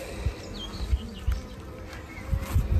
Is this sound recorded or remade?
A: recorded